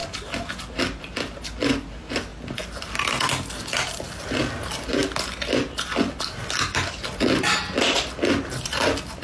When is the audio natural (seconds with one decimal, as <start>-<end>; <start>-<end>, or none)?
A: 0.0-9.2

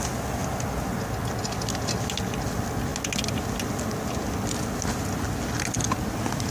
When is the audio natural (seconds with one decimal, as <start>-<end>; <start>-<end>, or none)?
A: 0.0-6.5

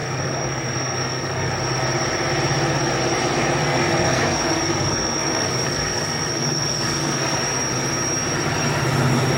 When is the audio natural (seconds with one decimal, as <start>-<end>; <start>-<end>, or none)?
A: 1.5-3.6; 7.4-9.4

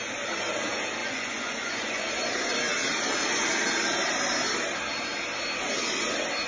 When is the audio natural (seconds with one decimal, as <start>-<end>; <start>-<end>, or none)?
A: 0.0-1.0; 2.1-6.5

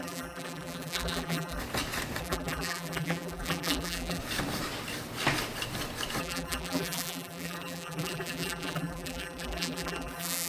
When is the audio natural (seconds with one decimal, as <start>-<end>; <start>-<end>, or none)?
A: 1.6-2.2; 4.2-6.2

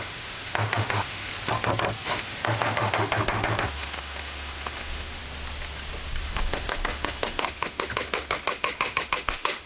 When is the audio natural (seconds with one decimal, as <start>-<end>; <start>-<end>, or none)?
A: 1.3-2.1; 5.2-6.2

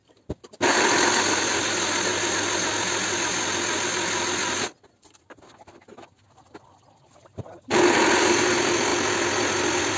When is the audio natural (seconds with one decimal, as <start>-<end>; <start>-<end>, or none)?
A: 0.0-10.0

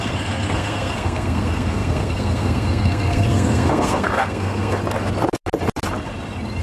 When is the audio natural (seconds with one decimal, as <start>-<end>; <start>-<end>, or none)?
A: 4.8-6.6